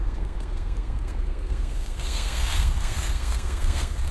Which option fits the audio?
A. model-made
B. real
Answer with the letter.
A